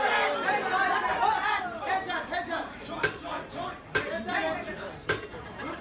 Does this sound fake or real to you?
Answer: real